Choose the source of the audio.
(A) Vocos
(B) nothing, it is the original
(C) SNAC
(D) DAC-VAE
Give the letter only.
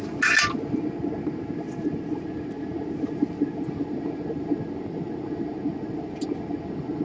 B